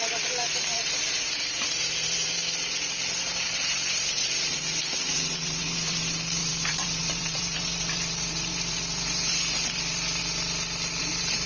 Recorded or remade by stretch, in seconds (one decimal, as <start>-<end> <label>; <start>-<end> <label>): 0.0-2.4 remade; 2.4-3.2 recorded; 3.2-10.2 remade; 10.2-11.0 recorded; 11.0-11.5 remade